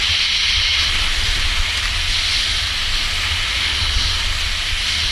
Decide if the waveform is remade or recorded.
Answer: recorded